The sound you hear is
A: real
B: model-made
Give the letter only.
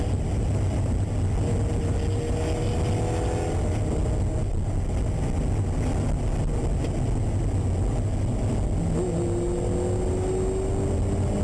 A